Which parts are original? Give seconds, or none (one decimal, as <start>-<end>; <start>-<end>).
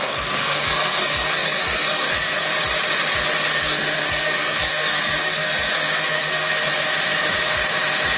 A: 2.5-3.6; 6.6-8.2